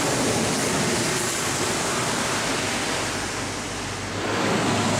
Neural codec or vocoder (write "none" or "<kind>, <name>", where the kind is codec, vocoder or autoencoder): none